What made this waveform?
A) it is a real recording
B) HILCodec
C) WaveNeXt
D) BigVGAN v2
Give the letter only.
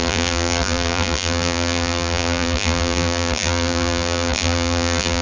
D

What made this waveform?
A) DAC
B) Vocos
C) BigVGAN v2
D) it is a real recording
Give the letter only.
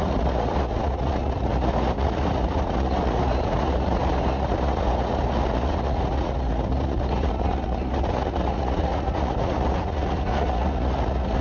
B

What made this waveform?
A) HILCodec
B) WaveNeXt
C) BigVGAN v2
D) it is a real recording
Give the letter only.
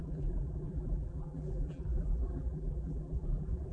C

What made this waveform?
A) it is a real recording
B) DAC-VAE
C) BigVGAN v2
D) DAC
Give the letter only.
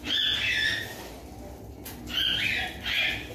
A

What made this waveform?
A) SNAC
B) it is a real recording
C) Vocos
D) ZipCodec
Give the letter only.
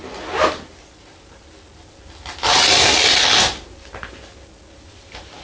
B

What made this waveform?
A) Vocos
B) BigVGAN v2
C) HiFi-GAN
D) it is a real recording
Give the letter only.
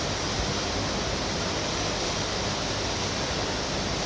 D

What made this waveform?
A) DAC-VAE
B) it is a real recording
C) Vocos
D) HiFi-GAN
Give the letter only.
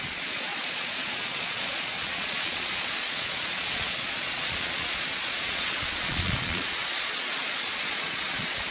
C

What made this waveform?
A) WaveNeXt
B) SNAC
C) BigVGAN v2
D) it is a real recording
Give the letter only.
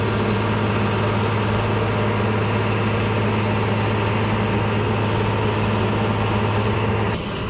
D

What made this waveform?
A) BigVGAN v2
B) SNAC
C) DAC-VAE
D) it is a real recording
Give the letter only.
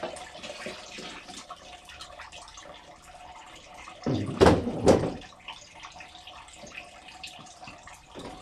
A